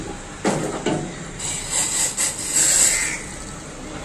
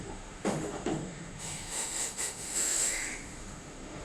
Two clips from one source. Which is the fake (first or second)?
second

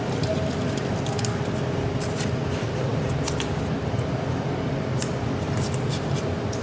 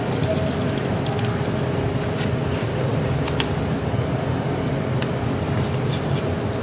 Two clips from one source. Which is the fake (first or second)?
first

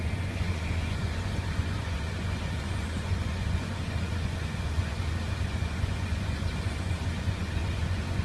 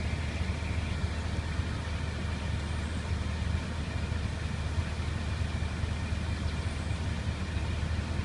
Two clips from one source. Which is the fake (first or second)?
first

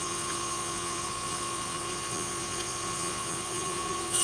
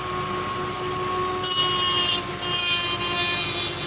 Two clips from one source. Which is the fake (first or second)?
first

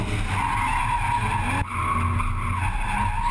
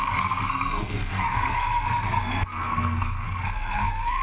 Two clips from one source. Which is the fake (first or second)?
second